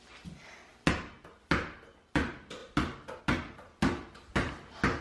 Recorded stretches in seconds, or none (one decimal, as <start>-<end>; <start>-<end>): 0.0-5.0